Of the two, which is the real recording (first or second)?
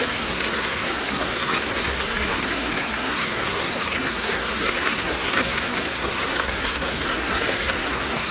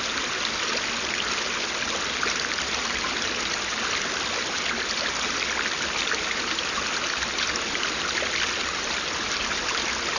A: second